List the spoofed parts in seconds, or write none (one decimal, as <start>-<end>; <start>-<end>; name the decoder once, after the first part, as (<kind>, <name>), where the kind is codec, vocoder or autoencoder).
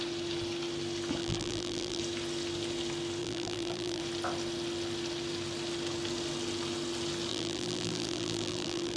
1.2-2.0 (vocoder, BigVGAN v2); 3.2-4.0; 7.3-9.0